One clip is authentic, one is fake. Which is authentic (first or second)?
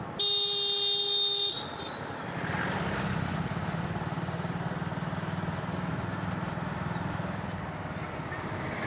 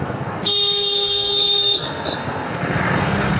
first